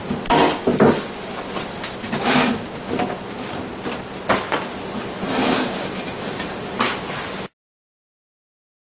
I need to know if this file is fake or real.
real